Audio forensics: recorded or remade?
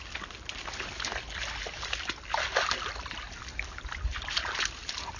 recorded